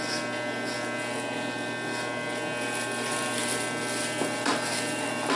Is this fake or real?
real